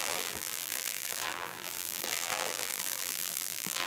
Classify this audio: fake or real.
fake